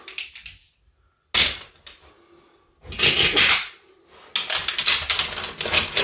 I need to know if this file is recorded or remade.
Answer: recorded